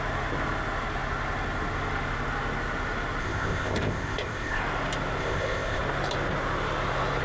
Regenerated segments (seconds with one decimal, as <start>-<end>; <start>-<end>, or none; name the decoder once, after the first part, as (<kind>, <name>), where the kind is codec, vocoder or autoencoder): 3.2-4.6 (codec, ZipCodec); 5.2-5.8